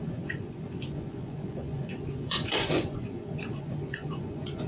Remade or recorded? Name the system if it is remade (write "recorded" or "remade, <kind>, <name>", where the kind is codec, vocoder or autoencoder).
remade, vocoder, Vocos